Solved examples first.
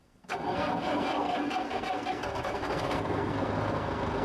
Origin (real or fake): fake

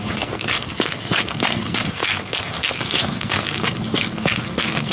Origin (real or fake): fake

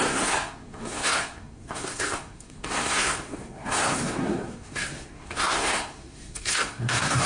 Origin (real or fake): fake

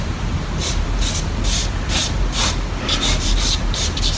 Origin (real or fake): real